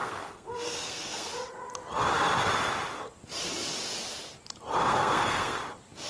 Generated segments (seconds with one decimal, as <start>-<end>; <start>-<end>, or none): 0.0-1.3; 4.9-5.6